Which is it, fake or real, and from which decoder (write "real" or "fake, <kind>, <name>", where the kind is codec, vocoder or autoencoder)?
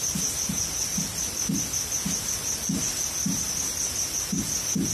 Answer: real